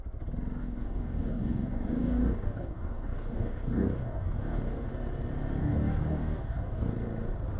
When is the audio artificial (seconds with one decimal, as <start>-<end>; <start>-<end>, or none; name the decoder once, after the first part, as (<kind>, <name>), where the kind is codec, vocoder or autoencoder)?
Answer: 0.6-4.9 (codec, DAC); 5.6-6.9